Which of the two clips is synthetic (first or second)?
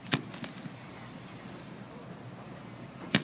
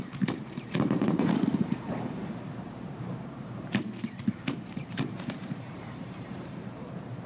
second